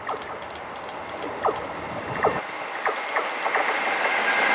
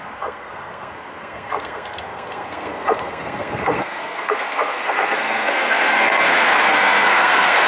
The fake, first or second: second